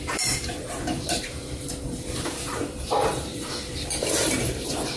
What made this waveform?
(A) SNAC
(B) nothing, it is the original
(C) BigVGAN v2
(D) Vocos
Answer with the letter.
C